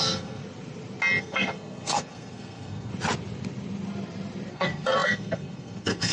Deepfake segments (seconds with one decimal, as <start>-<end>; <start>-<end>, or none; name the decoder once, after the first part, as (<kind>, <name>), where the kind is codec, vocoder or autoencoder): 0.0-0.4 (codec, SNAC); 1.2-2.9; 4.5-6.1

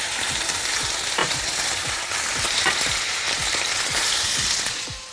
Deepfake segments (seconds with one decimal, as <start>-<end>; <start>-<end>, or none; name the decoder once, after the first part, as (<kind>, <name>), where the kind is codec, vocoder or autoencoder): 0.0-5.1 (vocoder, BigVGAN v2)

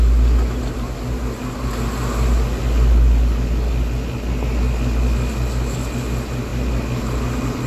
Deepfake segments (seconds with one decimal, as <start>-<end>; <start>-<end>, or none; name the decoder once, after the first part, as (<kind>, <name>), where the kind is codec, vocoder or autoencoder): none

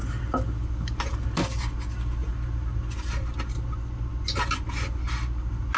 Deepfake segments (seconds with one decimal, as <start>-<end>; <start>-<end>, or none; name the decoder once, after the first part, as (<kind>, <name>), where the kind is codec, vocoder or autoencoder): none

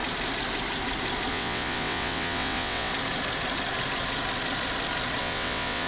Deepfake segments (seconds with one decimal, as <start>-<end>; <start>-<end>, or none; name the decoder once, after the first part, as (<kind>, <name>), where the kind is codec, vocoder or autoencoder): 1.3-2.9 (vocoder, WaveNeXt); 5.2-5.9

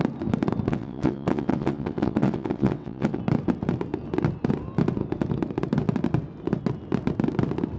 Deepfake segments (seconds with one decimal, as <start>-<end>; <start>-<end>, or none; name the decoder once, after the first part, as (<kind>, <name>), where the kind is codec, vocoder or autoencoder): 0.7-3.2 (vocoder, WaveNeXt)

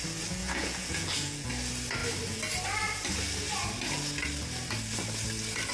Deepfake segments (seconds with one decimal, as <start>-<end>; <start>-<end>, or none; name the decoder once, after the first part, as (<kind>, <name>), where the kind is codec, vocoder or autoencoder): 0.4-1.5 (vocoder, Vocos)